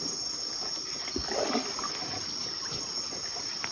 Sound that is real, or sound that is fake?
real